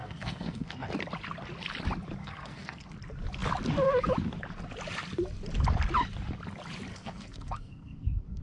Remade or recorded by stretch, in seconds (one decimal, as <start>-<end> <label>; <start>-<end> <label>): 0.0-0.9 remade; 0.9-2.2 recorded; 2.2-2.9 remade; 2.9-6.9 recorded; 6.9-8.4 remade